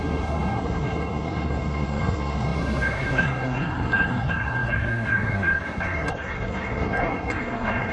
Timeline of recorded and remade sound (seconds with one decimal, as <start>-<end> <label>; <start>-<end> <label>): 0.0-7.9 remade